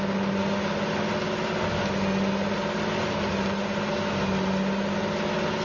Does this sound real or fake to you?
real